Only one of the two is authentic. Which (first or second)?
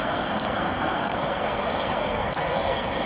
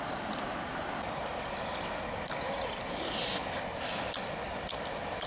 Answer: second